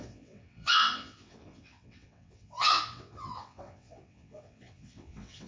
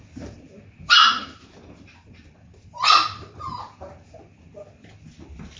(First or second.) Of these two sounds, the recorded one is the second